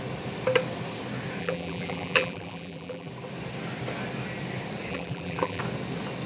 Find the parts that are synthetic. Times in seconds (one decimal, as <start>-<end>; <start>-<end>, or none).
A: 1.4-3.1; 4.9-5.6